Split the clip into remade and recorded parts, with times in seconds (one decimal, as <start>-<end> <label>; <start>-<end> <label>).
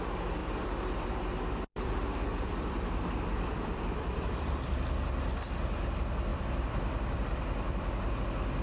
0.0-0.4 recorded; 0.4-4.5 remade; 4.5-6.3 recorded; 6.3-8.2 remade; 8.2-8.6 recorded